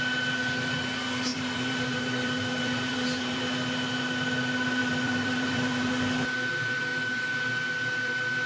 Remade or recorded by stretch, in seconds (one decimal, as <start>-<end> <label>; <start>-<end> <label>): 0.0-1.3 recorded; 1.3-3.4 remade; 3.4-4.8 recorded; 4.8-5.9 remade; 5.9-8.5 recorded